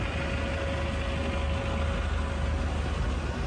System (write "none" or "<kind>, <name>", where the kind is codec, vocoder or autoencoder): none